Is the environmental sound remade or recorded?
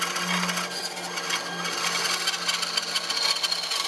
recorded